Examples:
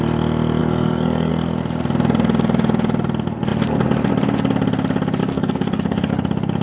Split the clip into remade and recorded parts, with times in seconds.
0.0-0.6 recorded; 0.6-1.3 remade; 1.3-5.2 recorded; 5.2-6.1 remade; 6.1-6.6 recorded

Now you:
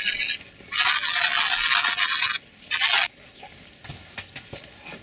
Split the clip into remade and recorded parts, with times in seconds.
0.0-5.0 recorded

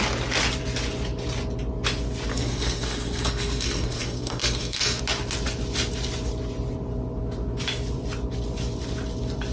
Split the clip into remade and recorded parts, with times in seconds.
0.0-2.3 recorded; 2.3-5.0 remade; 5.0-9.5 recorded

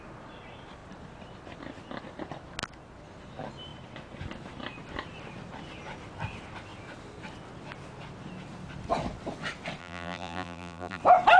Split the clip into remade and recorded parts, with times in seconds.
0.0-9.8 recorded; 9.8-11.0 remade; 11.0-11.4 recorded

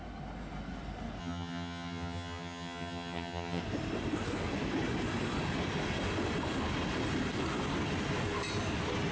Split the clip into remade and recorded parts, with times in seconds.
0.0-1.2 recorded; 1.2-3.6 remade; 3.6-9.1 recorded

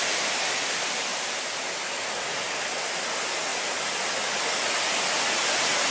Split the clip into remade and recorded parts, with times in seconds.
0.0-5.9 recorded